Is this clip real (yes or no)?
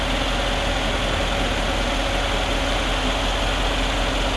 yes